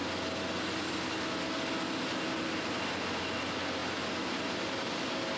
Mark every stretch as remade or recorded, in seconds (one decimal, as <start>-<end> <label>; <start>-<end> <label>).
0.0-5.4 recorded